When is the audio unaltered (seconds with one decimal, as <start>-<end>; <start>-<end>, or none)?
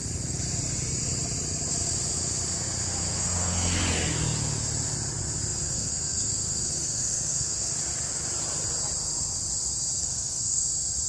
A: 0.0-3.0; 3.8-5.5; 7.8-10.0; 10.6-11.1